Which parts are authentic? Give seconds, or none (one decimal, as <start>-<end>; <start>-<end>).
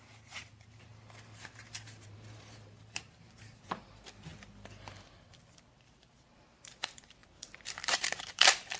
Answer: 0.9-1.4; 4.3-6.1